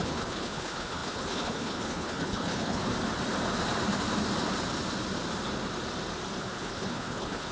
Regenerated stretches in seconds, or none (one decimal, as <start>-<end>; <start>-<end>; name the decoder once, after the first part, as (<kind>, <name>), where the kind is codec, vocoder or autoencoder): 0.0-2.8 (codec, HILCodec); 6.4-7.5